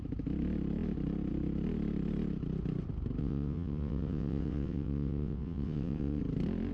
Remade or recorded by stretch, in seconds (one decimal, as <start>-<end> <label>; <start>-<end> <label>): 0.0-3.2 recorded; 3.2-6.2 remade; 6.2-6.7 recorded